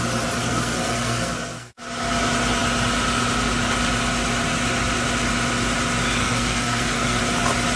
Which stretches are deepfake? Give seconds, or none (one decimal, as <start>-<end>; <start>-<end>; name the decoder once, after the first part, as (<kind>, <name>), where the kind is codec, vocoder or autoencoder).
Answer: 0.4-1.8 (codec, SNAC); 6.2-7.2